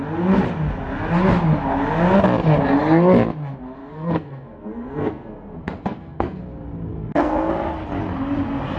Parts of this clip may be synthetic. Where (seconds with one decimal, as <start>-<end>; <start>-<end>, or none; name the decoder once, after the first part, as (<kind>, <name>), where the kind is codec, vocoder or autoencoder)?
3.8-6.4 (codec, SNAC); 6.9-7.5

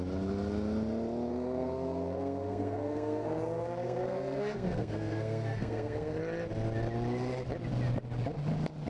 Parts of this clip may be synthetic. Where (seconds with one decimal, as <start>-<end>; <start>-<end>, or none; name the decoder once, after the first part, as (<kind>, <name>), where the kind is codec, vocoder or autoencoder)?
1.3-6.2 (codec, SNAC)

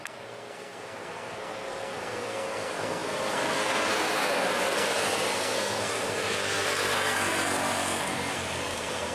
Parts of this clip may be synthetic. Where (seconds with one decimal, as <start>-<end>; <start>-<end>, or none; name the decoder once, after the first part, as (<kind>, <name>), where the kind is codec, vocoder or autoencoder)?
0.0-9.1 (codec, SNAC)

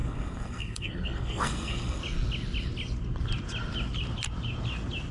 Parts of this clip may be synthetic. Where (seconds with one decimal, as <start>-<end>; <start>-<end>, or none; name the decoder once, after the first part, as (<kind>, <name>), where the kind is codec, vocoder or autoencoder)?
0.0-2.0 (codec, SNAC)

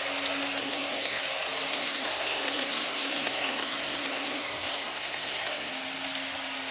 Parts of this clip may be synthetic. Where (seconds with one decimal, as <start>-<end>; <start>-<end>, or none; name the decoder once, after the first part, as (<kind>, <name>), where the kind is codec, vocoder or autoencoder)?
0.6-1.2 (codec, SNAC); 1.7-5.7